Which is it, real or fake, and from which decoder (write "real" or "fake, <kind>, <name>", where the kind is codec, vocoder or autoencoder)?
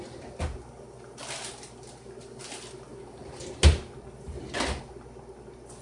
real